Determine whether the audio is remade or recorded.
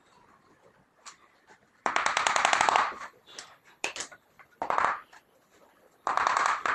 remade